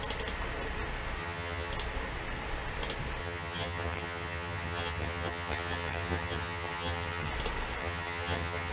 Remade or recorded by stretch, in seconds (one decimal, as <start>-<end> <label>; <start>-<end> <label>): 0.0-1.2 recorded; 1.2-1.7 remade; 1.7-3.2 recorded; 3.2-7.3 remade; 7.3-7.8 recorded; 7.8-8.7 remade

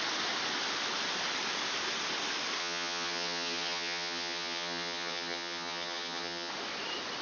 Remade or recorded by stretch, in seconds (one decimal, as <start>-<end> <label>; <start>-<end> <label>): 0.0-2.6 recorded; 2.6-6.5 remade; 6.5-7.2 recorded

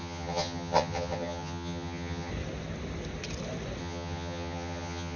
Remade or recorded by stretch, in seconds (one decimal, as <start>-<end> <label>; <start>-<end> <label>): 0.0-2.3 remade; 2.3-3.8 recorded; 3.8-5.2 remade

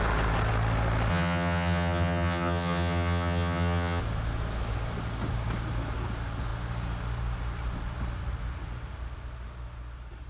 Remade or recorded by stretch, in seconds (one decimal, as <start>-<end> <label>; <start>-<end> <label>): 0.0-1.1 recorded; 1.1-4.0 remade; 4.0-10.3 recorded